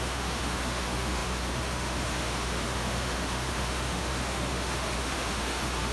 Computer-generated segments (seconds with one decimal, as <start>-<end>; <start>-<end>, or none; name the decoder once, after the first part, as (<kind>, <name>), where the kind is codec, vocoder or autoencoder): 0.0-5.9 (autoencoder, DAC-VAE)